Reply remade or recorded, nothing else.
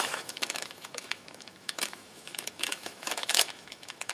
remade